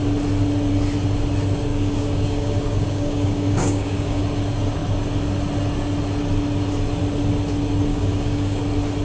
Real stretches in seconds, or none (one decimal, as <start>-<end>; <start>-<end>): 0.0-1.7; 4.2-7.9; 8.6-9.0